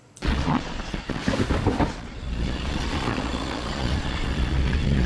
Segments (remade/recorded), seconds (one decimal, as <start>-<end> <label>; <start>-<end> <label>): 0.0-1.2 remade; 1.2-1.9 recorded; 1.9-5.1 remade